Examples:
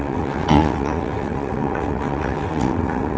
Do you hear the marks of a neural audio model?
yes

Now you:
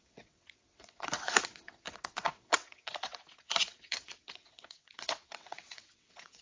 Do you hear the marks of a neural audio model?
yes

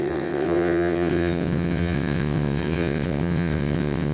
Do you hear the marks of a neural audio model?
yes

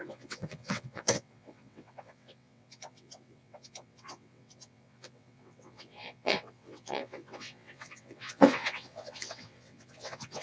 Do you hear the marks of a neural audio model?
yes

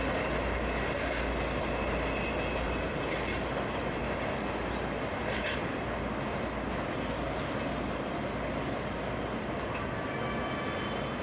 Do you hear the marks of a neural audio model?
no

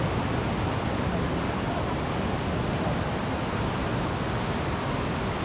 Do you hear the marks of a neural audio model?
no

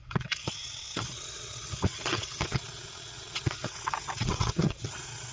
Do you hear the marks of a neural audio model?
yes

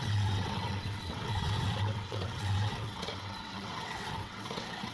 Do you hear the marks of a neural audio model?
yes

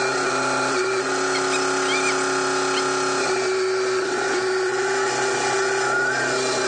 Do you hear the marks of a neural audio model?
no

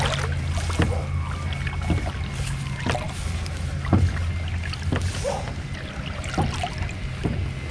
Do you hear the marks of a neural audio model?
no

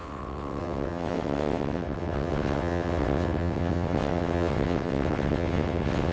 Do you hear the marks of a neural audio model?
yes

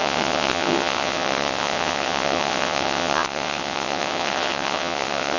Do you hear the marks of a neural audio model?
yes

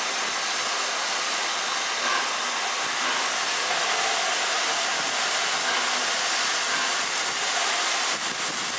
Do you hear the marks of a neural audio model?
no